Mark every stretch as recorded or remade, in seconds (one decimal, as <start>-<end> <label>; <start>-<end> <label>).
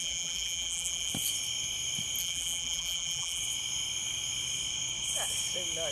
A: 0.0-1.1 remade; 1.1-2.2 recorded; 2.2-3.4 remade; 3.4-5.9 recorded